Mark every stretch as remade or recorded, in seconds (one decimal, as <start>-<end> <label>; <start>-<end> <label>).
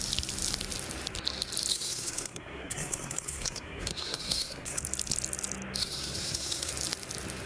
0.0-1.7 recorded; 1.7-4.8 remade; 4.8-5.8 recorded; 5.8-6.7 remade; 6.7-7.5 recorded